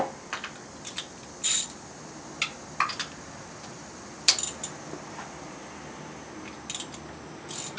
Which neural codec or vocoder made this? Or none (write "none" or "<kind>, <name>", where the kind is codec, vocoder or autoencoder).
none